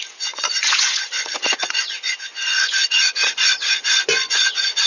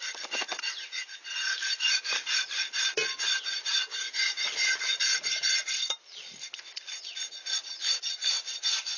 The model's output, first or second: first